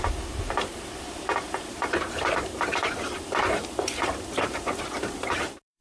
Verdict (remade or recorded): remade